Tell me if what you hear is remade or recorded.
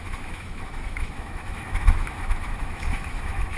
remade